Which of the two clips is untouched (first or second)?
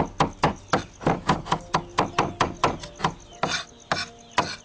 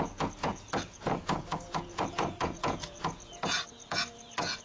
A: first